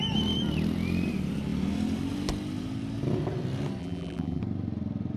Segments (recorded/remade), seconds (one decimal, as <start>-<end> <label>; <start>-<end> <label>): 0.0-3.8 recorded; 3.8-4.4 remade; 4.4-5.2 recorded